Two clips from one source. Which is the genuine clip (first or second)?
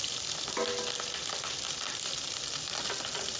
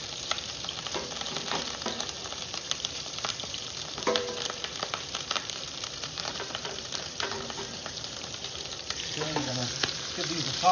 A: first